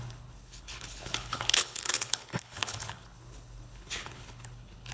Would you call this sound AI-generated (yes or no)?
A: yes